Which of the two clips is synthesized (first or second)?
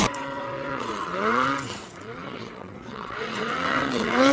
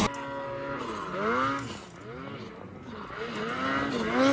first